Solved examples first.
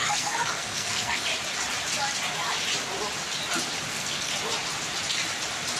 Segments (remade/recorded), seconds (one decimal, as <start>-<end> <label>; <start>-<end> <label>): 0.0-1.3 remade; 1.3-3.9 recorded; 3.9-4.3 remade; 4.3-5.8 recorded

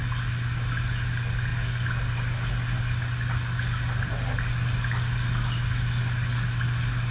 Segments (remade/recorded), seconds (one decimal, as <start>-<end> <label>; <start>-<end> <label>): 0.0-7.1 recorded

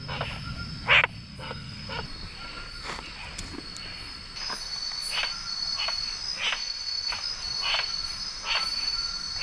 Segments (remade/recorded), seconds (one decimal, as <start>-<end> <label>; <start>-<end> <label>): 0.0-1.3 recorded; 1.3-1.9 remade; 1.9-6.6 recorded; 6.6-7.1 remade; 7.1-9.4 recorded